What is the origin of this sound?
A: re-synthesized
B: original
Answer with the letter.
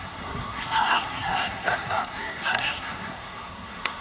A